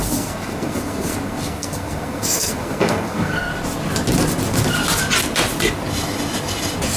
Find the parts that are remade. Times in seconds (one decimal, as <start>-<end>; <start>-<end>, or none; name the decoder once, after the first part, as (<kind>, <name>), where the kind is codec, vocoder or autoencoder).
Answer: 0.0-3.5 (codec, SNAC)